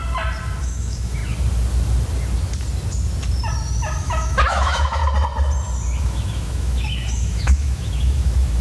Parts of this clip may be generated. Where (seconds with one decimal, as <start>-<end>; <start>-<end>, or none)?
0.6-1.2; 4.0-5.0; 6.0-8.6